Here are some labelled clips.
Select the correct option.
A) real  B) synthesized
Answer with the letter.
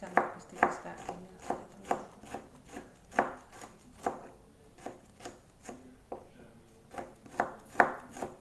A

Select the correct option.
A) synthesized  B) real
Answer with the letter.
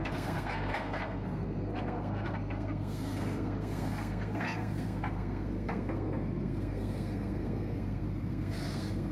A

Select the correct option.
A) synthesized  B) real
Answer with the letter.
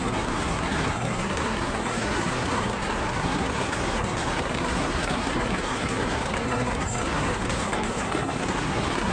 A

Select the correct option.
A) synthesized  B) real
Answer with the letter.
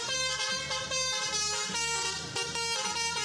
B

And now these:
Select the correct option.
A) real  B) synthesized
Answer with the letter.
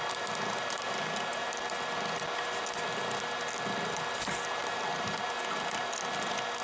A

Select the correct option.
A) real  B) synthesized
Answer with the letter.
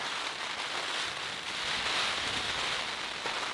A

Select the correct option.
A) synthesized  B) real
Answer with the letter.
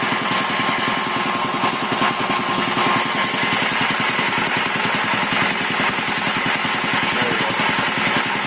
B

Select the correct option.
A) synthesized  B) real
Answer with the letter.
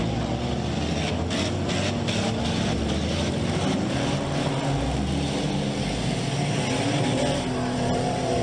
B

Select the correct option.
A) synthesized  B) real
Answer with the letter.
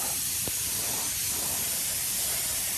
B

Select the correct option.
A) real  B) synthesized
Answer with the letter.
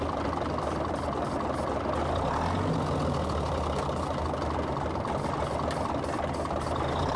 A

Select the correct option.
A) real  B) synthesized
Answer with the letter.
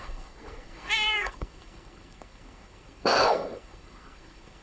B